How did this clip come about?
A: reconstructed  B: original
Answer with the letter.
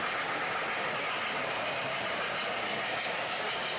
B